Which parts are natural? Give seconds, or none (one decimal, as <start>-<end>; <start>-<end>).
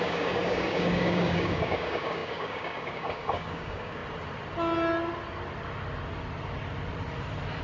4.0-7.6